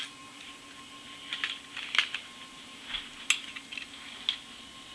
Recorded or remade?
recorded